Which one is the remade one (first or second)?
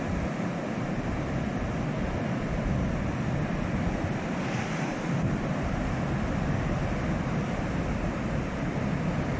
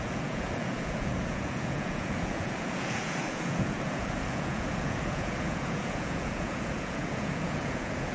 second